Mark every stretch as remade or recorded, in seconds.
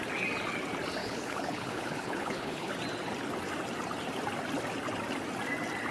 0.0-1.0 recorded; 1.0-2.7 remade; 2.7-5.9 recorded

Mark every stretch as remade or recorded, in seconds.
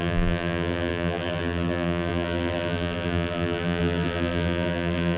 0.0-5.2 remade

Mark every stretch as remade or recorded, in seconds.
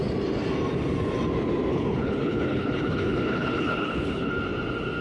0.0-1.7 recorded; 1.7-4.3 remade; 4.3-5.0 recorded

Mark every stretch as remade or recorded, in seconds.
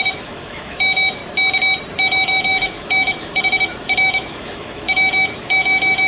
0.0-1.2 remade; 1.2-2.0 recorded; 2.0-6.1 remade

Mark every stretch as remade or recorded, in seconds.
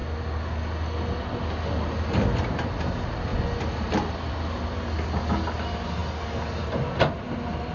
0.0-7.7 recorded